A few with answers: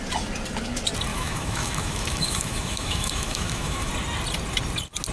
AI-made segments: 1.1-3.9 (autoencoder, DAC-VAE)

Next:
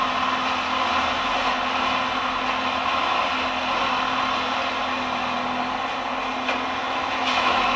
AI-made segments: 6.8-7.8 (autoencoder, DAC-VAE)

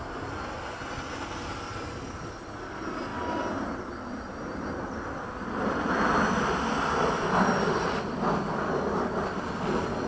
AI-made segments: none